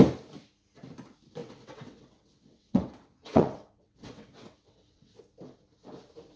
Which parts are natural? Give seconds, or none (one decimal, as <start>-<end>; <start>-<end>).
0.0-1.4; 5.2-6.4